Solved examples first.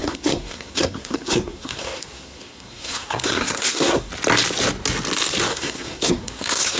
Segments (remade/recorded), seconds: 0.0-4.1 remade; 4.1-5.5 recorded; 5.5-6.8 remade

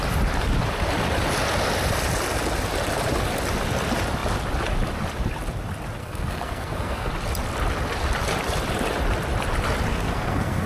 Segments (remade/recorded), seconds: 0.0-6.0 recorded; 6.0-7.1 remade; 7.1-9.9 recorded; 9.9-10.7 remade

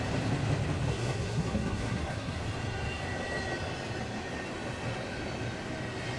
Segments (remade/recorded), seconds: 0.0-0.9 recorded; 0.9-2.4 remade; 2.4-6.2 recorded